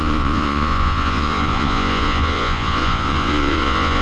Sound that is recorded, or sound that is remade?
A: remade